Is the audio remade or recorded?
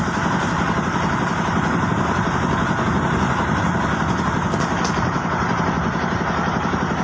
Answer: recorded